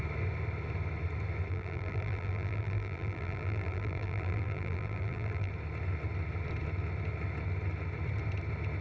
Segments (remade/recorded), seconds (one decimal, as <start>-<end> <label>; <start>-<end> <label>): 0.0-1.5 recorded; 1.5-5.5 remade; 5.5-8.8 recorded